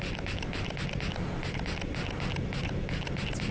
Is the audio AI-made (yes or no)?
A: no